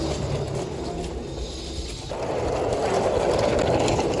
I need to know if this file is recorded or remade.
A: recorded